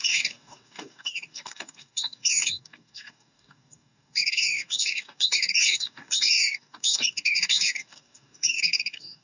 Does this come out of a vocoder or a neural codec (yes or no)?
yes